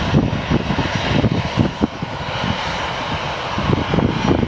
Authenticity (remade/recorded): recorded